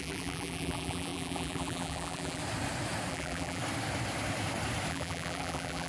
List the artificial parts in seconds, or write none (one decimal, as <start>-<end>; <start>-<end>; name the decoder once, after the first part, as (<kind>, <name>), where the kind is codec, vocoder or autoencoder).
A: 0.0-2.4 (vocoder, BigVGAN v2); 3.1-3.6; 4.9-5.9